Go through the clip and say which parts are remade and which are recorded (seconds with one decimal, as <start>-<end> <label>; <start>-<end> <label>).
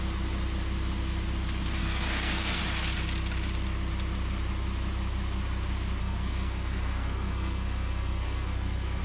0.0-1.8 recorded; 1.8-2.6 remade; 2.6-6.0 recorded; 6.0-9.0 remade